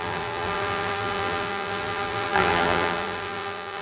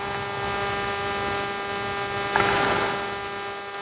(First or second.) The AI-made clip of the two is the first